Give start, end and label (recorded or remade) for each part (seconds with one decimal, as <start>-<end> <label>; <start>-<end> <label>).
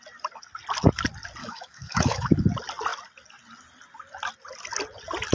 0.0-1.4 recorded; 1.4-2.4 remade; 2.4-5.3 recorded